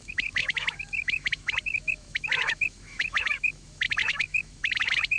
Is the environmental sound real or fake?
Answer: fake